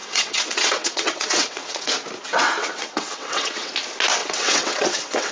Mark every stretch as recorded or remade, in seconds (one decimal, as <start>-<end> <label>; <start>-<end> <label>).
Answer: 0.0-1.9 remade; 1.9-2.3 recorded; 2.3-3.7 remade; 3.7-4.2 recorded; 4.2-5.3 remade